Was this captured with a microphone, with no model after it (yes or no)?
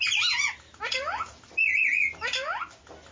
yes